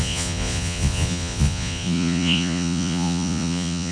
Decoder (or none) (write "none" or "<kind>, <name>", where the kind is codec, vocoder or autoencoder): vocoder, Vocos